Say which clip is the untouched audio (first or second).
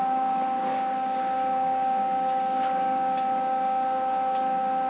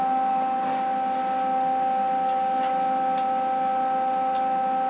second